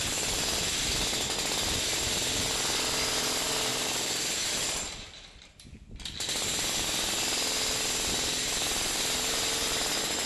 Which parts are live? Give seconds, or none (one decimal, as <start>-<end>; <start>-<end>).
0.0-3.7; 4.5-10.3